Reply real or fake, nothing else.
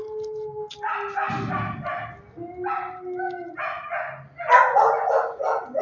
real